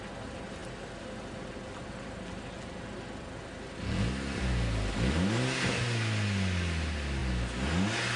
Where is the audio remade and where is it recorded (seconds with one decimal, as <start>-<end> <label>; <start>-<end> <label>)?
0.0-8.2 recorded

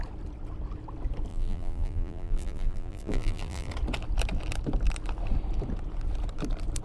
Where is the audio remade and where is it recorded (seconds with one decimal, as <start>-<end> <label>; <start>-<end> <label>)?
0.0-1.3 recorded; 1.3-3.7 remade; 3.7-6.8 recorded

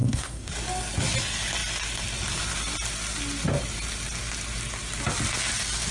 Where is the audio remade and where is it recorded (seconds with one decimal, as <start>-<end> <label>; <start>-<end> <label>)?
0.0-0.5 remade; 0.5-5.9 recorded

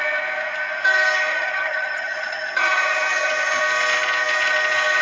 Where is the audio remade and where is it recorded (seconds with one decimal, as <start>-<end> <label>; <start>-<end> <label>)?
0.0-1.3 recorded; 1.3-3.6 remade; 3.6-5.0 recorded

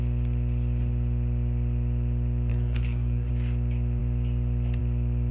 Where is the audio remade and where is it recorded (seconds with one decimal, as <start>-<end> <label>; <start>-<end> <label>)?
0.0-2.5 recorded; 2.5-3.3 remade; 3.3-5.3 recorded

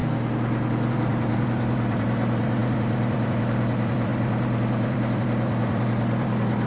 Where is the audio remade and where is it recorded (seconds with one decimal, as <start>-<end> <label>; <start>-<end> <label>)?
0.0-0.9 recorded; 0.9-6.7 remade

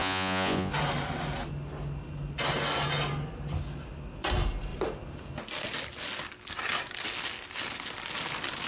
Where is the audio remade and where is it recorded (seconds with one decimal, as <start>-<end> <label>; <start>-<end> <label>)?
0.0-0.7 remade; 0.7-8.7 recorded